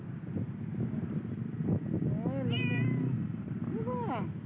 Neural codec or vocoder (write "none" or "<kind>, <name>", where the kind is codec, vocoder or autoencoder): none